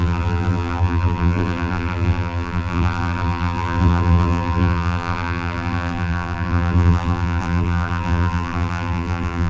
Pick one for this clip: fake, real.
fake